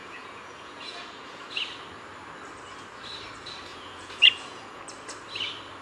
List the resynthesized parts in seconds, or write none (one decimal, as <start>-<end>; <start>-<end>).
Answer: 0.0-1.6; 3.7-4.8